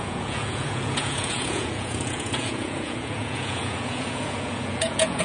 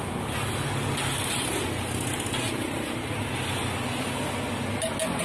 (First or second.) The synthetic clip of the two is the first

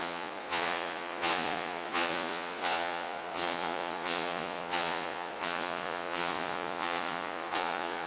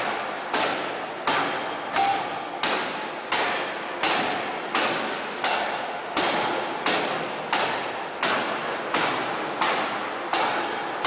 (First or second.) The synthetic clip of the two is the first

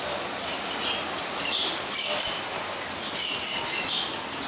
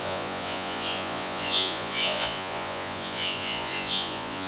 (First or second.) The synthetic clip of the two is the second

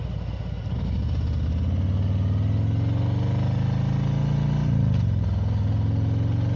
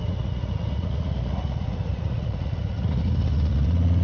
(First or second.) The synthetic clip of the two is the second